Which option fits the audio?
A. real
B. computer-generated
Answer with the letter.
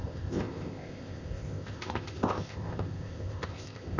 B